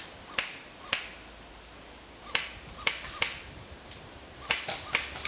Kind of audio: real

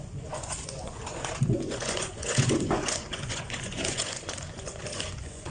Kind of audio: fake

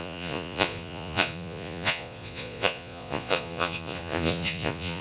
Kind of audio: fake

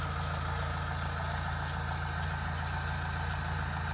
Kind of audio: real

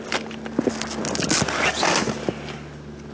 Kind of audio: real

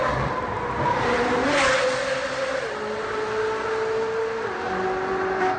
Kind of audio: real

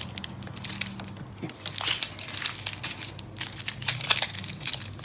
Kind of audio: real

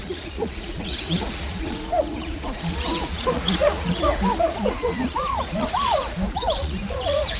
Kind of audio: fake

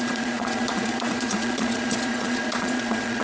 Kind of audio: fake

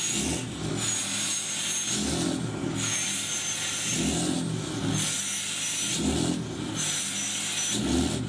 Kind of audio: real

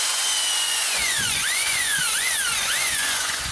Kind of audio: fake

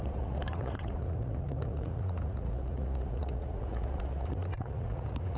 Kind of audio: fake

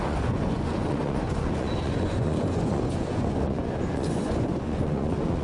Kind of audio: fake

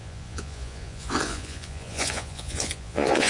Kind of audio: fake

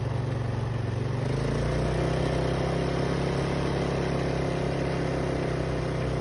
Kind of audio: real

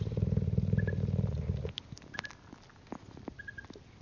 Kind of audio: real